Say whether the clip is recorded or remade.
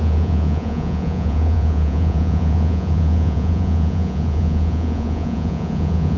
remade